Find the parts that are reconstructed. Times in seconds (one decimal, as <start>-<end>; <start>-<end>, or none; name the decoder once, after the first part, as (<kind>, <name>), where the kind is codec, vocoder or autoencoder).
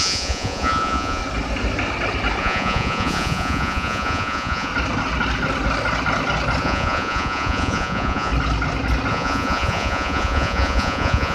0.0-1.2 (vocoder, Vocos); 2.4-4.7; 6.6-8.3; 9.1-11.3